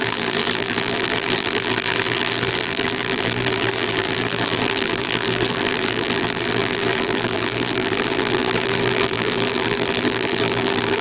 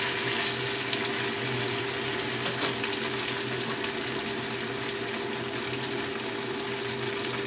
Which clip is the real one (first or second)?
second